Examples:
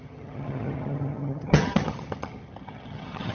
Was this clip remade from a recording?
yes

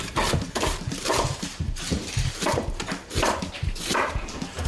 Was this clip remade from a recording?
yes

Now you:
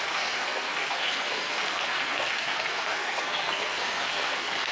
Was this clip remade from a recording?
yes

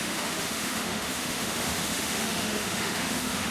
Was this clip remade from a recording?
yes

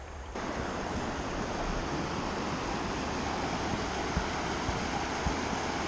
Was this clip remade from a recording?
no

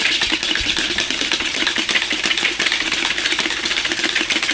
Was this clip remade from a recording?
yes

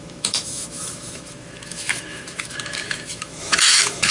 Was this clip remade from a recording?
yes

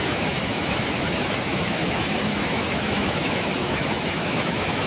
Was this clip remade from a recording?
yes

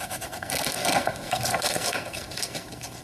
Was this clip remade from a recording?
yes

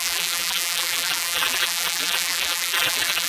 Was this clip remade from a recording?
yes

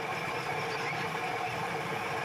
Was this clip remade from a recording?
yes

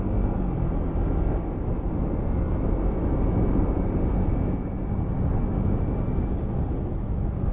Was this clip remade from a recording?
no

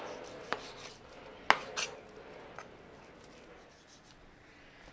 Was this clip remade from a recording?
no